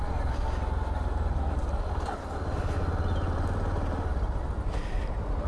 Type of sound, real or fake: real